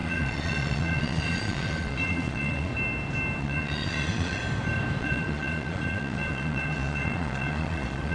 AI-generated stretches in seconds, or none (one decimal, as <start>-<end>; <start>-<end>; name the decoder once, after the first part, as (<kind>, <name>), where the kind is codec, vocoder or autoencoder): 0.0-2.7 (vocoder, Vocos); 3.4-4.4; 5.0-8.1

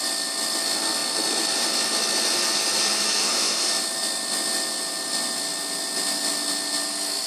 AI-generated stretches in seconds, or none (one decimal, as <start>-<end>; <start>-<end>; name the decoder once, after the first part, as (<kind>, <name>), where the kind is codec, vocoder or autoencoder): 3.2-3.7 (autoencoder, DAC-VAE)

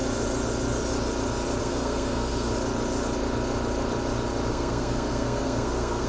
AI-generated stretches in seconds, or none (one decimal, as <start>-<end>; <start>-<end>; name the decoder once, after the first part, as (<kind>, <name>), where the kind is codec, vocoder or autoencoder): 1.6-2.5 (codec, SNAC); 4.5-6.1

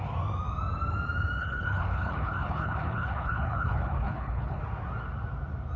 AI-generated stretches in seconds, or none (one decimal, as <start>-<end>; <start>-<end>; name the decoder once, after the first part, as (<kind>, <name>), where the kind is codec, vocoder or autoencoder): 1.4-4.6 (codec, HILCodec)

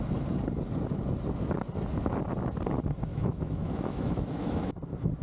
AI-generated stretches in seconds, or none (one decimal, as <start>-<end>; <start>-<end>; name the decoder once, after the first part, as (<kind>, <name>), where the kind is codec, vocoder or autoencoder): 3.1-4.7 (autoencoder, DAC-VAE)

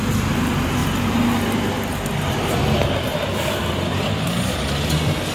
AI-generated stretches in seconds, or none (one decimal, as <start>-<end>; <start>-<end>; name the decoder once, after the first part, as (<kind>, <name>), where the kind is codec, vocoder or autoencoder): none